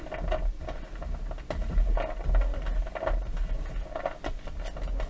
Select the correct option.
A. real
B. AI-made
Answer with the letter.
A